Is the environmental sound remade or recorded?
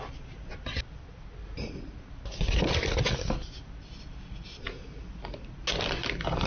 recorded